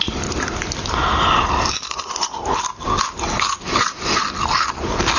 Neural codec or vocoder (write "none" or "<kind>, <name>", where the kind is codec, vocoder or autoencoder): none